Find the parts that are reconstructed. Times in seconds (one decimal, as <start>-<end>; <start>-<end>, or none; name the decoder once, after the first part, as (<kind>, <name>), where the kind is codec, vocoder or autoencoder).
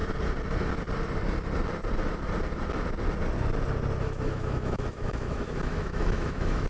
4.0-6.7 (autoencoder, DAC-VAE)